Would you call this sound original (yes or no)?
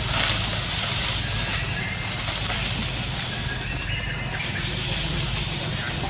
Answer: yes